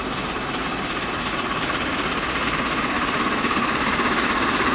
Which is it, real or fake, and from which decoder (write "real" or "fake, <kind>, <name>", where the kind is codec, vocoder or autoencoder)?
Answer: real